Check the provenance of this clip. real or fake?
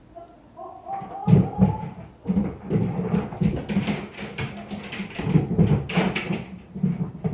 real